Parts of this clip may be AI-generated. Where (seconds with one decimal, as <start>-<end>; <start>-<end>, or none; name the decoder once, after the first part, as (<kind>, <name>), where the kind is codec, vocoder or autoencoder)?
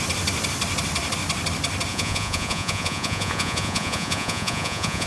1.9-5.1 (vocoder, Vocos)